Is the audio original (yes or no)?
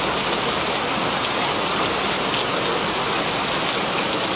yes